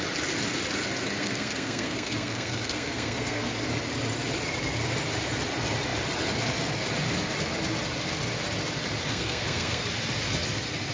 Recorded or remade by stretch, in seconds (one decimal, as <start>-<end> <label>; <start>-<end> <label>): 0.0-1.2 recorded; 1.2-3.5 remade; 3.5-9.1 recorded; 9.1-9.8 remade; 9.8-10.9 recorded